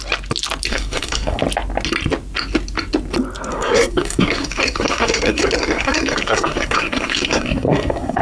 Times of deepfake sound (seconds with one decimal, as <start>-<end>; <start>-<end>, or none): 0.7-1.4; 3.5-8.2

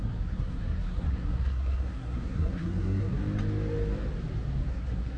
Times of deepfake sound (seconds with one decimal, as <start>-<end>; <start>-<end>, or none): 0.0-3.2; 4.7-5.2